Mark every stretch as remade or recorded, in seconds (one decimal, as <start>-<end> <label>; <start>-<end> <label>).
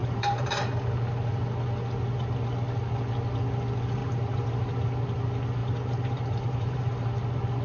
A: 0.0-0.5 remade; 0.5-4.0 recorded; 4.0-4.7 remade; 4.7-5.6 recorded; 5.6-7.1 remade; 7.1-7.6 recorded